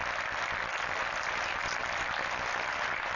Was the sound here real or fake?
real